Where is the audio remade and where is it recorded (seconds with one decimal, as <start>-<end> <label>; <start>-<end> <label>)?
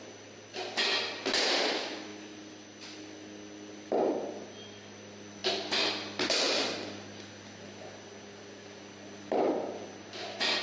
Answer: 0.0-10.6 recorded